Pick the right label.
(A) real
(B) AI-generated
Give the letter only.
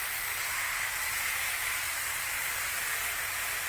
B